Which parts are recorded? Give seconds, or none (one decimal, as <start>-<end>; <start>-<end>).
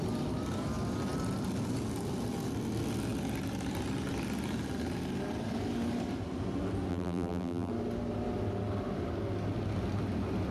0.0-6.9; 7.7-10.5